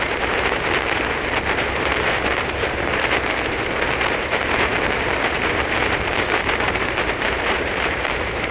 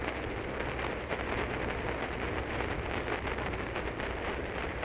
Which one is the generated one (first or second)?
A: first